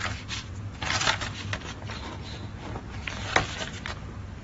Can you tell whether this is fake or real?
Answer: real